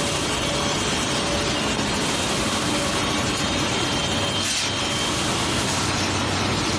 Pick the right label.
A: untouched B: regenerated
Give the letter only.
A